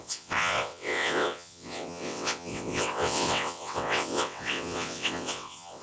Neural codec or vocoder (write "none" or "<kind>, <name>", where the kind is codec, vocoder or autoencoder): vocoder, WaveNeXt